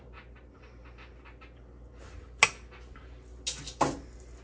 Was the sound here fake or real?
real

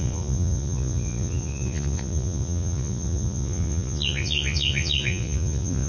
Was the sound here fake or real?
fake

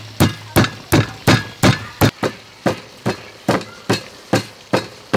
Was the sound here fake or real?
real